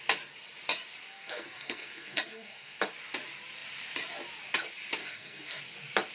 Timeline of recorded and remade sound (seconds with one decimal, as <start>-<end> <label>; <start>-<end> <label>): 0.0-1.1 recorded; 1.1-2.8 remade; 2.8-5.0 recorded; 5.0-5.6 remade; 5.6-6.1 recorded